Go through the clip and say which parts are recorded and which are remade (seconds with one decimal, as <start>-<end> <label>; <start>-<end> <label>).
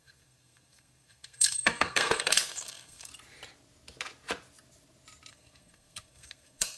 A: 0.0-3.1 remade; 3.1-5.3 recorded; 5.3-6.8 remade